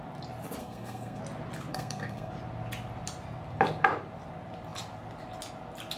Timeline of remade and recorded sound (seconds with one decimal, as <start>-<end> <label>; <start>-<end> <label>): 0.0-0.6 recorded; 0.6-1.2 remade; 1.2-1.7 recorded; 1.7-2.3 remade; 2.3-6.0 recorded